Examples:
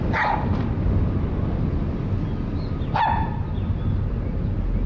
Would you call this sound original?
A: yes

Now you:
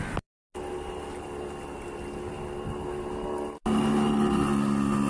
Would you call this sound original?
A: yes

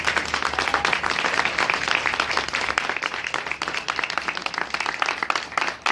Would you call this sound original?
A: yes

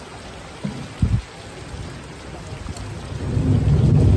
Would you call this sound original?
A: yes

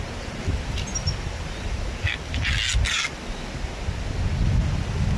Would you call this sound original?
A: yes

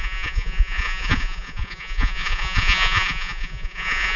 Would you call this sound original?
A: no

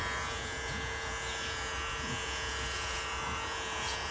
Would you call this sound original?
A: no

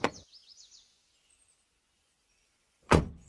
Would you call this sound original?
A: no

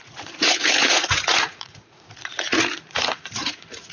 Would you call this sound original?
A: no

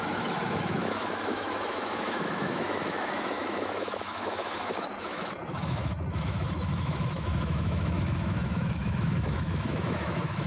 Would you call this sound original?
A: no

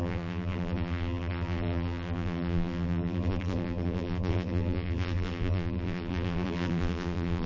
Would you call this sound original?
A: no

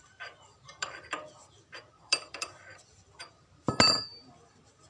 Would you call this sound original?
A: no